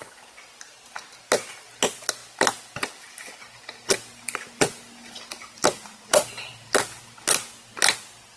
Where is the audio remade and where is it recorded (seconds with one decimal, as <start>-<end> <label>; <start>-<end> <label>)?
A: 0.0-8.4 recorded